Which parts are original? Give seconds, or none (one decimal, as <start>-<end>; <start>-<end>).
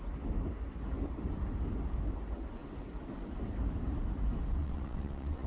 0.0-4.6